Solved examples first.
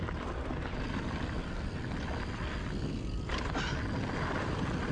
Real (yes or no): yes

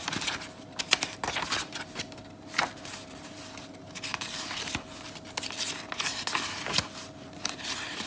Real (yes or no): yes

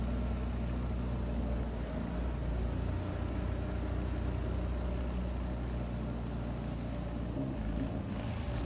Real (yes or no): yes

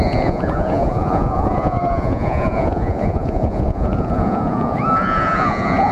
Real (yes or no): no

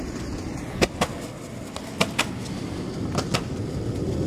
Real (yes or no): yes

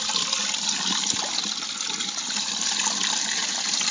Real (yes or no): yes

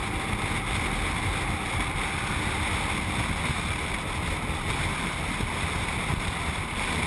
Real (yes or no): yes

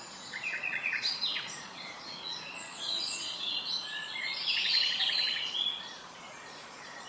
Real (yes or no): no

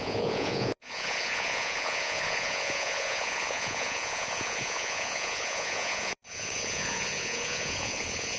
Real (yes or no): no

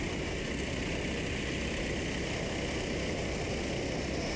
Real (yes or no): yes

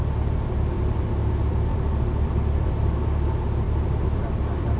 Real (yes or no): yes